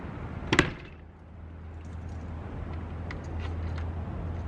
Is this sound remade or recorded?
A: recorded